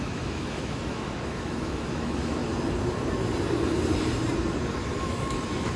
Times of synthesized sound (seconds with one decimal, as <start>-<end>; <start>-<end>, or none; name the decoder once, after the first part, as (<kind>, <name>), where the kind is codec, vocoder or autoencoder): 0.0-2.4 (autoencoder, DAC-VAE); 5.0-5.8